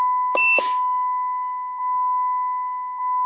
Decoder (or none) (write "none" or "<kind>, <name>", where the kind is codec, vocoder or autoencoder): none